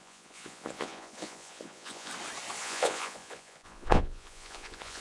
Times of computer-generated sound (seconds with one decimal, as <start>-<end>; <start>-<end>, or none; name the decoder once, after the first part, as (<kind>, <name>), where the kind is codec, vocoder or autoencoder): 0.0-2.1 (vocoder, Vocos); 2.6-5.0